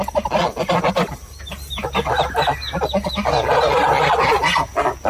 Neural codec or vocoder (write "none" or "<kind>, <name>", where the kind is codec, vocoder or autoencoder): none